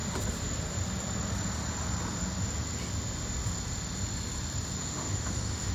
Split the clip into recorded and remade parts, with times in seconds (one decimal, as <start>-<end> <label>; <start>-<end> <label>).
0.0-4.8 recorded; 4.8-5.7 remade